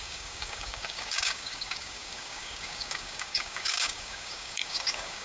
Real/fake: fake